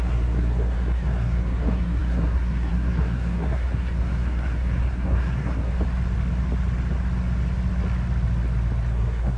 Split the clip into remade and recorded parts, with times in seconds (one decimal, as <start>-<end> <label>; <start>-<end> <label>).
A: 0.0-5.7 remade; 5.7-8.9 recorded; 8.9-9.4 remade